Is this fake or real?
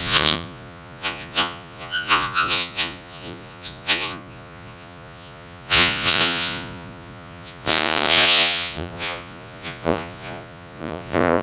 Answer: fake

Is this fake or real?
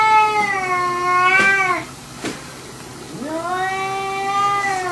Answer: real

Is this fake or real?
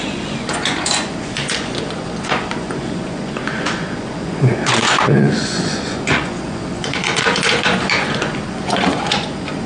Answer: fake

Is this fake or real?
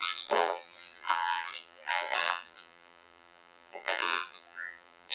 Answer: fake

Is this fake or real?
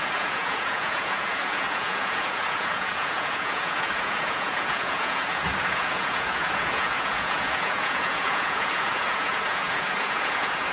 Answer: fake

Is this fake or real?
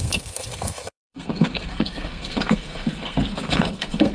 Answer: fake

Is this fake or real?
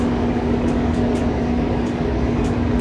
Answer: fake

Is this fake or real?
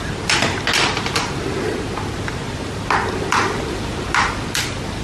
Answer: real